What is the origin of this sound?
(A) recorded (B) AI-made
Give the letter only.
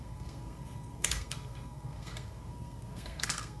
B